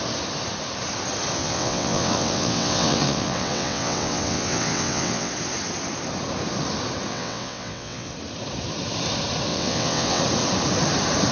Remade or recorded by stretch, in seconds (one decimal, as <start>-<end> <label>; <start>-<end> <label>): 0.0-1.4 recorded; 1.4-5.3 remade; 5.3-7.1 recorded; 7.1-8.1 remade; 8.1-9.5 recorded; 9.5-10.2 remade; 10.2-11.3 recorded

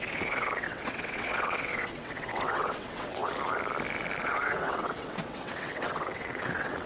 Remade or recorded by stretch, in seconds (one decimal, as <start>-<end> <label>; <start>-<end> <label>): 0.0-3.3 remade; 3.3-4.2 recorded; 4.2-6.9 remade

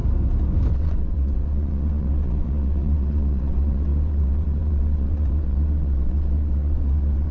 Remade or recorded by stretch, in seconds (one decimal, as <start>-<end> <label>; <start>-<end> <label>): 0.0-0.7 recorded; 0.7-7.3 remade

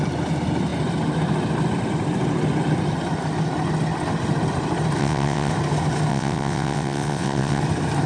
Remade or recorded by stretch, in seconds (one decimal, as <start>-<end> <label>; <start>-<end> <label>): 0.0-5.0 recorded; 5.0-5.5 remade; 5.5-6.1 recorded; 6.1-7.6 remade; 7.6-8.1 recorded

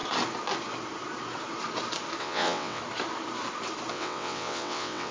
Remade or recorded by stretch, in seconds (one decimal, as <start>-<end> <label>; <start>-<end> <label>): 0.0-2.2 recorded; 2.2-2.8 remade; 2.8-3.9 recorded; 3.9-5.1 remade

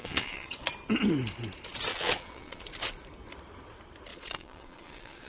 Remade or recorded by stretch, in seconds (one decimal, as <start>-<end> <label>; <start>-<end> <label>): 0.0-0.7 remade; 0.7-1.9 recorded; 1.9-2.6 remade; 2.6-4.1 recorded; 4.1-5.3 remade